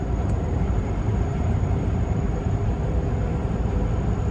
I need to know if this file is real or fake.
fake